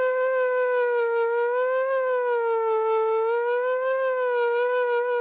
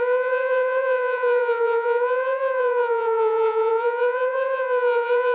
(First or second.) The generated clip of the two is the second